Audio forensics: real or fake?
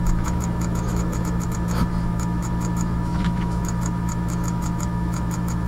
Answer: fake